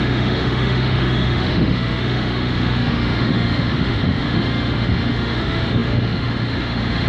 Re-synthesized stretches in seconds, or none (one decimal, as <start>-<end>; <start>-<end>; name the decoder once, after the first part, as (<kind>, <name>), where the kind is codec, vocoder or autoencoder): 0.0-7.1 (autoencoder, DAC-VAE)